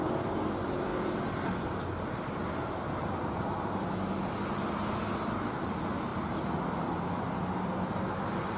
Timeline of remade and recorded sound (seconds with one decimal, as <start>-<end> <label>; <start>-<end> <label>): 0.0-8.6 recorded